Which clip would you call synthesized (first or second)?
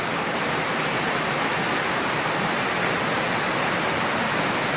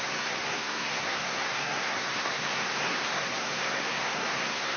second